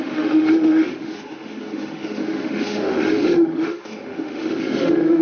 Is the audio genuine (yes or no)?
no